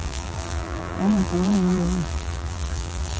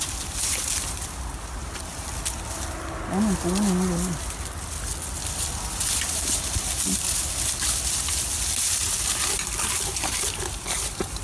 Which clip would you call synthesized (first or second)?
first